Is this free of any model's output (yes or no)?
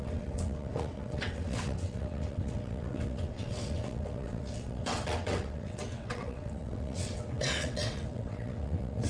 no